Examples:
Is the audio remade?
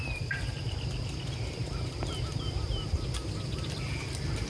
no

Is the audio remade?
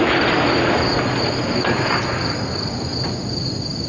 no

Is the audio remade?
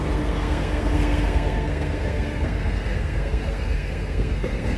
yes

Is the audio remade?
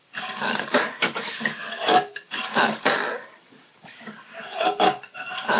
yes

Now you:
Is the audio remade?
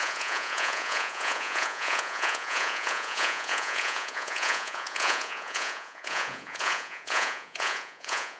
yes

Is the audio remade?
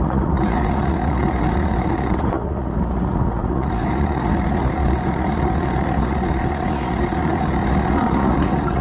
yes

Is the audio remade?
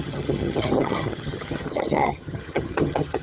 yes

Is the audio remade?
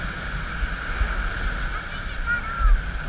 no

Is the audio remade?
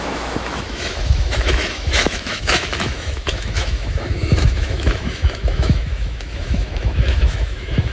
yes